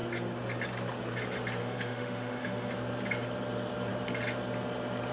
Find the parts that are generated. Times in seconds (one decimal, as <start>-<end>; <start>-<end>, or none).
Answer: 1.6-2.7

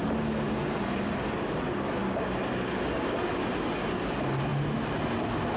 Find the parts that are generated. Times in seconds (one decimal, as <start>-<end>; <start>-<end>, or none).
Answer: none

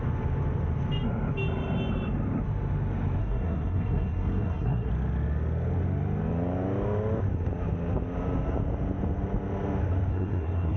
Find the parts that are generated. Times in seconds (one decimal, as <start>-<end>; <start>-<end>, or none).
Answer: 3.2-4.9; 10.1-10.8

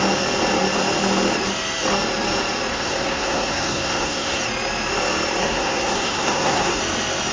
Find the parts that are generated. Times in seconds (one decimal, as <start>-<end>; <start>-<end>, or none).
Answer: 2.7-4.4; 5.4-6.8

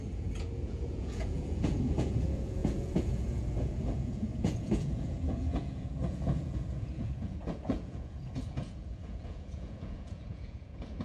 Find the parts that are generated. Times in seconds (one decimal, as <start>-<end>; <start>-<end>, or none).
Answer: 0.0-11.0

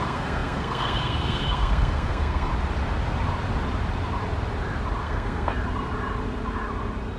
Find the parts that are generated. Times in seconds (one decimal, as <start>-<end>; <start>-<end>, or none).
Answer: 0.0-2.5; 5.0-5.5